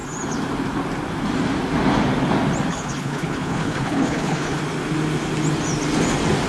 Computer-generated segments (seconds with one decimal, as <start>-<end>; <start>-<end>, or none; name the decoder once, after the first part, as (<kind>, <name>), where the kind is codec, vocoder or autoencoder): 2.7-4.6 (codec, HILCodec)